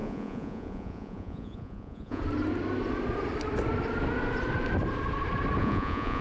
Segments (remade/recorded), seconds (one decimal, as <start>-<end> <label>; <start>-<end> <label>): 0.0-2.2 remade; 2.2-5.6 recorded; 5.6-6.2 remade